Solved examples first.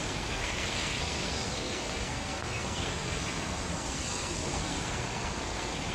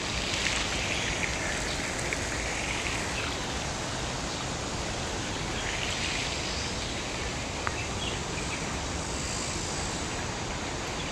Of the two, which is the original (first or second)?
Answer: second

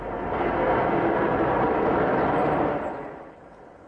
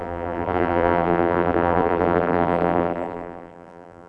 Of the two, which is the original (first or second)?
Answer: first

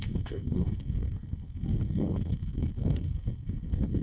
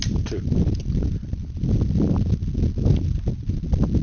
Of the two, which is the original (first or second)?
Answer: second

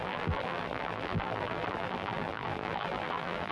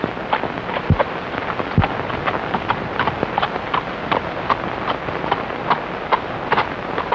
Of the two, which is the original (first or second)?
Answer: second